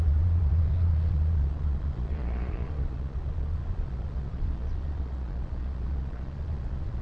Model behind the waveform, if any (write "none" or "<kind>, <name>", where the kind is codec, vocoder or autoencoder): vocoder, Vocos